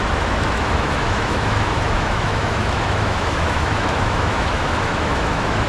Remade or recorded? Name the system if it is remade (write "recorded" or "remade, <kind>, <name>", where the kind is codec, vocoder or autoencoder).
remade, autoencoder, DAC-VAE